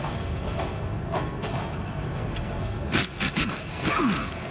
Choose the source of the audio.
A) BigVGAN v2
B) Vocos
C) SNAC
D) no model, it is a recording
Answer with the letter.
C